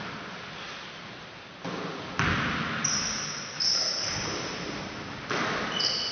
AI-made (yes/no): no